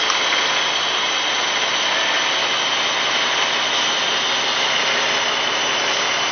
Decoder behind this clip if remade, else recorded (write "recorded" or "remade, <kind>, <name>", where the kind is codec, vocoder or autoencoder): recorded